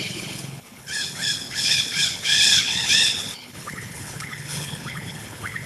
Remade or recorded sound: remade